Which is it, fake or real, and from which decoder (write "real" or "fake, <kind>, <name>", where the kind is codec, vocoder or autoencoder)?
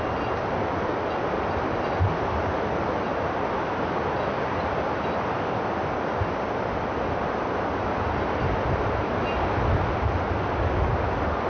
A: real